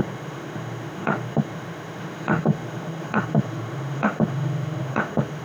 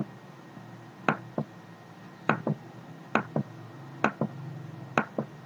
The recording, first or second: second